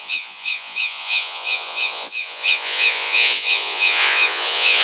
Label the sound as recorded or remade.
remade